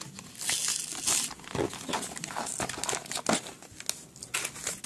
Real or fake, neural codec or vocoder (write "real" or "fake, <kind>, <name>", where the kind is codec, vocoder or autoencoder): real